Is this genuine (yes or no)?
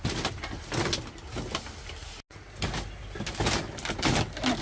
yes